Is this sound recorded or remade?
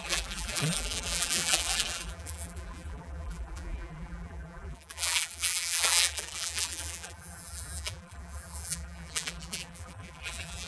remade